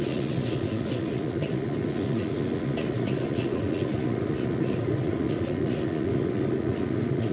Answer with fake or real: fake